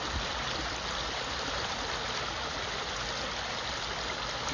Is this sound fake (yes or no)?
no